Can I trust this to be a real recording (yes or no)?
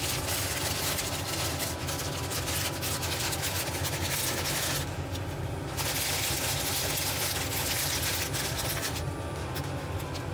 yes